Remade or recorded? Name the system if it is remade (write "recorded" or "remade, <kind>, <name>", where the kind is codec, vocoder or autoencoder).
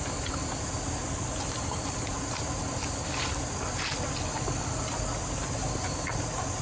recorded